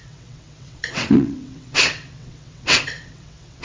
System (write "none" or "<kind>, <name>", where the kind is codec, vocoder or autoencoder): vocoder, WaveNeXt